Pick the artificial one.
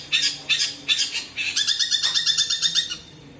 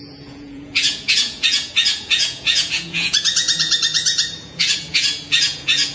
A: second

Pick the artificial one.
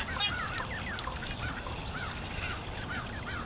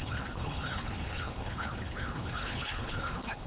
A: second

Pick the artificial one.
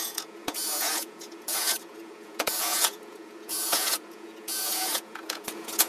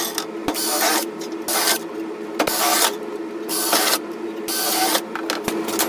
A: first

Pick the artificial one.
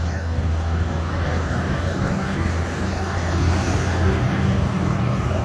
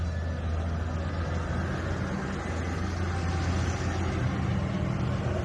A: first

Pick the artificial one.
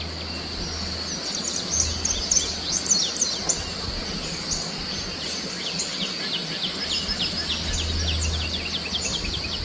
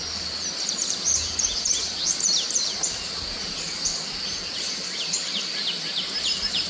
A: second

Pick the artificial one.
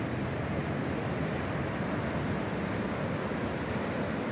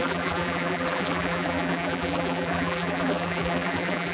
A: second